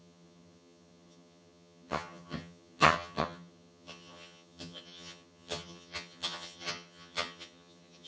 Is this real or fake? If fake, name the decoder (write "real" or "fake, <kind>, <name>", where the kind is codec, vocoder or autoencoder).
fake, vocoder, HiFi-GAN